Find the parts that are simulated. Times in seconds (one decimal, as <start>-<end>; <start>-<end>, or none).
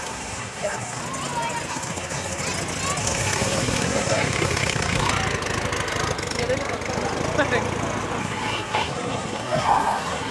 0.0-1.0; 1.7-2.4; 3.0-5.1; 8.2-10.3